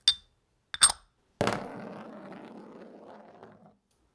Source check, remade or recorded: recorded